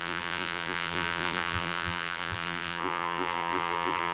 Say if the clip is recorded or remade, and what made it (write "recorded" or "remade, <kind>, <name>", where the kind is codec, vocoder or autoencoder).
remade, vocoder, BigVGAN v2